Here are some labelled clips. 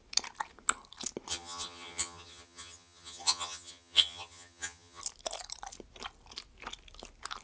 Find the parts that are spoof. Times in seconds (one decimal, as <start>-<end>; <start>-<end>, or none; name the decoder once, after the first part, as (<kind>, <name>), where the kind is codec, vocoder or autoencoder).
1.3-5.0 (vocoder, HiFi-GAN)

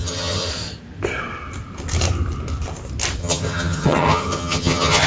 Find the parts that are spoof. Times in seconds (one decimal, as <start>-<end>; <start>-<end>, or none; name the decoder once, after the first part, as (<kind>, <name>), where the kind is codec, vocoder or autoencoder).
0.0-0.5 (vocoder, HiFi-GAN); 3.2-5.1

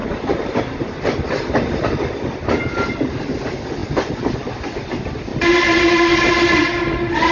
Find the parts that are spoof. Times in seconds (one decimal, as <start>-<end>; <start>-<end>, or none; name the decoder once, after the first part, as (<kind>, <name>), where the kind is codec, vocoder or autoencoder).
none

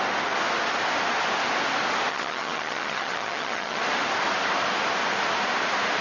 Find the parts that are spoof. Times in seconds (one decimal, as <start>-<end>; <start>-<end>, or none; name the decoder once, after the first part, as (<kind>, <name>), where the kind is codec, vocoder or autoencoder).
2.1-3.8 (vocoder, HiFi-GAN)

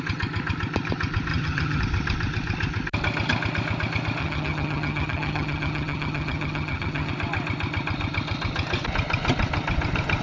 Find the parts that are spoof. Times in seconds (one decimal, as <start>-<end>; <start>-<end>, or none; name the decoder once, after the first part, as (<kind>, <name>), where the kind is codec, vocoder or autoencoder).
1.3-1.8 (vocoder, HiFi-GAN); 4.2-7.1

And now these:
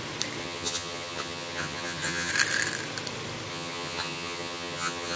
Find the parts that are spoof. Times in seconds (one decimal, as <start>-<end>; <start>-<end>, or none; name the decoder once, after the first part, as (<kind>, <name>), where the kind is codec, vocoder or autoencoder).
0.4-2.3 (vocoder, HiFi-GAN); 3.5-5.2